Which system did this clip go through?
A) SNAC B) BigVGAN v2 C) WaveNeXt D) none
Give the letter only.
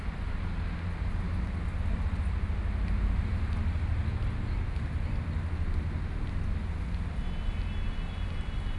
D